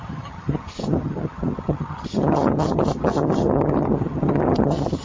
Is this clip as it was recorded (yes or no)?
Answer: no